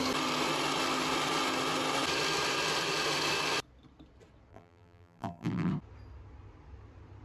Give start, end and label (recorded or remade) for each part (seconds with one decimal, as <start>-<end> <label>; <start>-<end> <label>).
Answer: 0.0-4.5 recorded; 4.5-5.7 remade; 5.7-7.2 recorded